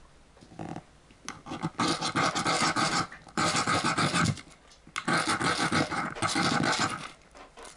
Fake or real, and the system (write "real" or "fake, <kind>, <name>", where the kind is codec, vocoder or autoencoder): real